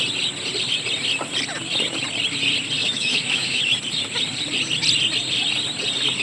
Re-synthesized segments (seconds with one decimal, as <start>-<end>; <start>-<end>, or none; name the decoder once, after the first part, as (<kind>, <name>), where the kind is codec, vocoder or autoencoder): 2.8-3.6 (autoencoder, DAC-VAE)